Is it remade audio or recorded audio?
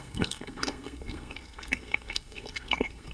remade